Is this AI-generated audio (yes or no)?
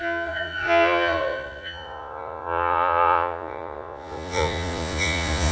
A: yes